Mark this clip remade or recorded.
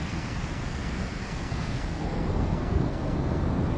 remade